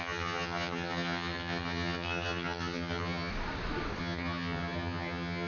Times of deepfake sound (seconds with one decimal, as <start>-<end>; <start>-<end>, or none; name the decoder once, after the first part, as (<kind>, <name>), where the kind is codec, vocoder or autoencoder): 0.0-3.3 (vocoder, HiFi-GAN); 4.0-5.5